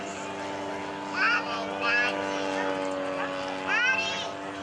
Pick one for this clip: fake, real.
real